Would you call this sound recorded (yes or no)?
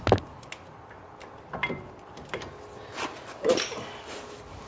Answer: yes